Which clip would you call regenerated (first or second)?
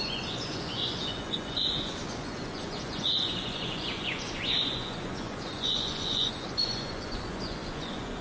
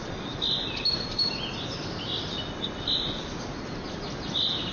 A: first